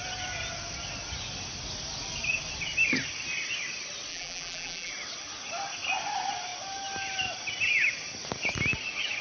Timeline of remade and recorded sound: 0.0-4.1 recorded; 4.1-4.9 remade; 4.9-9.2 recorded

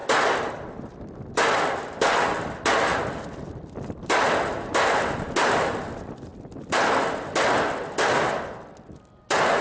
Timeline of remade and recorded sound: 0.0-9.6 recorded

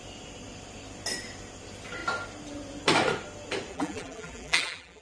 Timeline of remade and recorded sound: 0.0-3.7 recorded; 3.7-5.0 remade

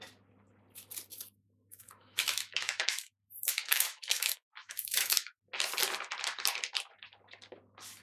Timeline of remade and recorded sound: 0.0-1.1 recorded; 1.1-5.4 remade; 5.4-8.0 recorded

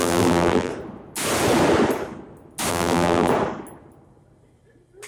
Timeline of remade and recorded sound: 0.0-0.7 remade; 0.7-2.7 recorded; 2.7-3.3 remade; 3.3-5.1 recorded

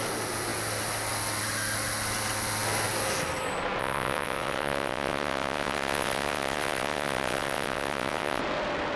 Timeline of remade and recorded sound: 0.0-3.8 recorded; 3.8-8.4 remade; 8.4-9.0 recorded

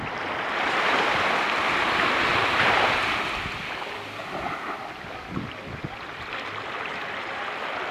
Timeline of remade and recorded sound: 0.0-2.3 remade; 2.3-5.4 recorded; 5.4-7.9 remade

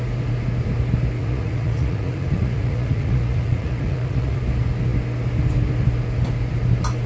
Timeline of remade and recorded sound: 0.0-1.2 recorded; 1.2-4.4 remade; 4.4-7.1 recorded